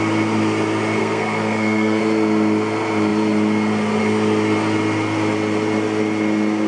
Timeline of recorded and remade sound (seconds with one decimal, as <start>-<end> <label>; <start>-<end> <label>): 0.0-1.0 recorded; 1.0-2.0 remade; 2.0-6.7 recorded